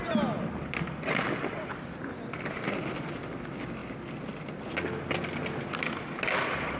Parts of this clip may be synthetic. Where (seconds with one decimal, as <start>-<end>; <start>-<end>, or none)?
none